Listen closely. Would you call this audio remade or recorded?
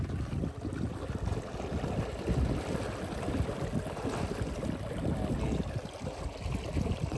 recorded